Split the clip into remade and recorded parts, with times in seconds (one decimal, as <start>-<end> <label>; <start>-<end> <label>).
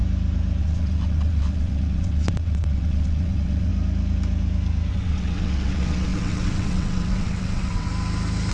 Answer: 0.0-0.6 recorded; 0.6-3.7 remade; 3.7-4.9 recorded; 4.9-7.9 remade; 7.9-8.5 recorded